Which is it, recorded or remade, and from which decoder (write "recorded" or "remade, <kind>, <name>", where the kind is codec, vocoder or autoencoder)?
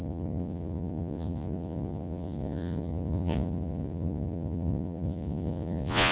remade, vocoder, Vocos